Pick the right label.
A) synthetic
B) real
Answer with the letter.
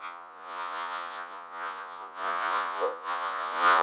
A